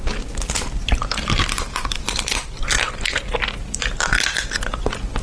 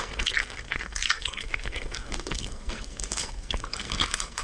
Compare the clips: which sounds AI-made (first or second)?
second